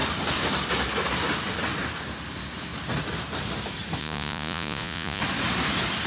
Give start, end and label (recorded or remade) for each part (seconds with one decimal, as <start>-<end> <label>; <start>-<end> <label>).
0.0-4.0 recorded; 4.0-5.2 remade; 5.2-6.1 recorded